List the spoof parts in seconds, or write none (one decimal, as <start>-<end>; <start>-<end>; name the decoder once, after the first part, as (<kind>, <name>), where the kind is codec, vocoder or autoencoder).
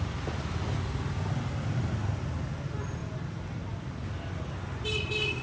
none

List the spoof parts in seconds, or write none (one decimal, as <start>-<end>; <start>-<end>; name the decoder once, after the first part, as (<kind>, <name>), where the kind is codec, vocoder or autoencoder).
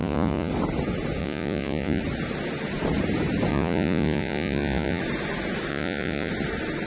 0.0-0.5 (vocoder, Vocos); 1.2-2.0; 3.5-5.0; 5.7-6.3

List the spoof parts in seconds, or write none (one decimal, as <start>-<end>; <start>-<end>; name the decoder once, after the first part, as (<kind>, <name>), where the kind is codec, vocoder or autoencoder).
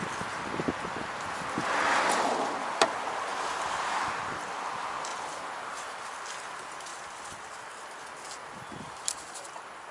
5.1-5.7 (vocoder, BigVGAN v2)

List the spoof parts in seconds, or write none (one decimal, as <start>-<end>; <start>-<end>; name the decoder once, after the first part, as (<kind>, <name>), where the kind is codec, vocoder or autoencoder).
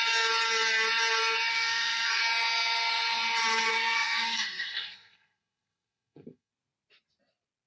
1.5-2.2 (codec, SNAC); 3.7-6.5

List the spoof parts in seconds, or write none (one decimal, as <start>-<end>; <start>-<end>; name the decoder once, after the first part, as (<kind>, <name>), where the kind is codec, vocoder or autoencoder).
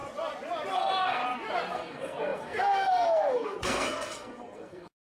0.7-1.2 (codec, SNAC); 1.7-5.1